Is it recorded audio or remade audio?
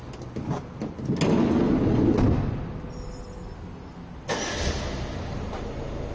recorded